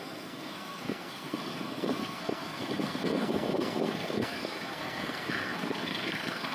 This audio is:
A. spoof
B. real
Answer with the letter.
A